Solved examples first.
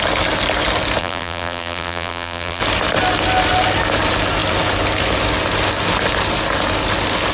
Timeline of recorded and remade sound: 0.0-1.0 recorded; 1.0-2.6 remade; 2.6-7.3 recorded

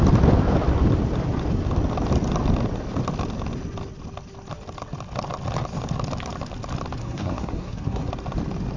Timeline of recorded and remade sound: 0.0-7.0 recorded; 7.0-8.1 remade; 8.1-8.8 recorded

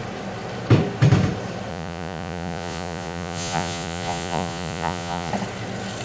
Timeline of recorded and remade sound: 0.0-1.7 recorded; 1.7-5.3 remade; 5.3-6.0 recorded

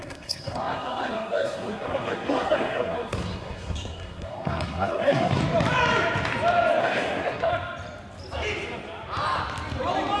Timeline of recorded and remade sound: 0.0-5.4 remade; 5.4-6.8 recorded; 6.8-7.5 remade; 7.5-10.2 recorded